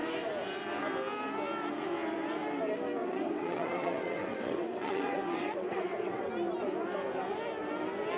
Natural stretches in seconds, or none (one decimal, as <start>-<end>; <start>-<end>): 0.0-3.0; 6.3-8.2